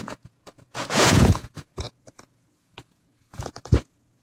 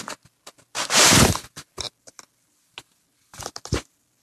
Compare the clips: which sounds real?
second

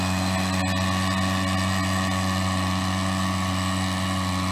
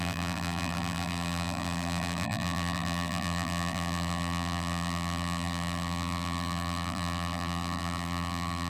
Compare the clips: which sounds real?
first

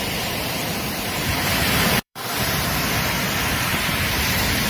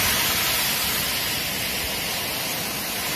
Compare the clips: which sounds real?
second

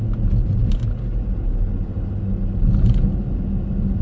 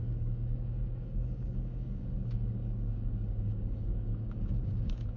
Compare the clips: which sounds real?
first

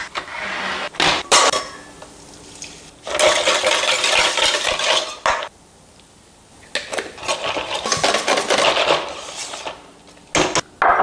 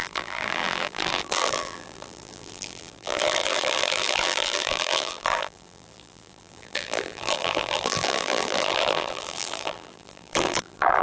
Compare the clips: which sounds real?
first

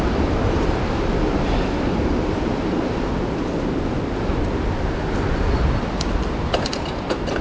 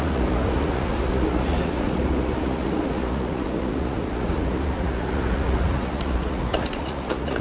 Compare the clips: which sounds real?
first